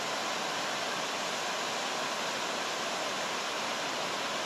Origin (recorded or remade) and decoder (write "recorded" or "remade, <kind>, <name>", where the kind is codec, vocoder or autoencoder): recorded